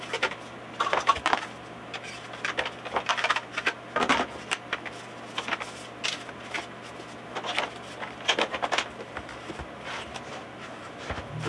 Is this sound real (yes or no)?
yes